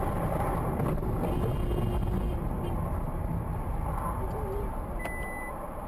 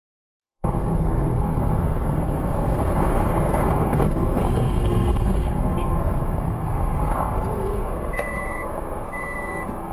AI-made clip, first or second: second